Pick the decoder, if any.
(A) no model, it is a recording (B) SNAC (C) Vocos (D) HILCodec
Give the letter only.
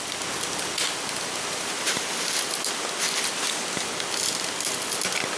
A